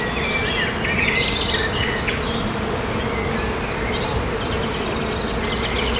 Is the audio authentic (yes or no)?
yes